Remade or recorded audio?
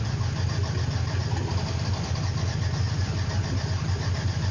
recorded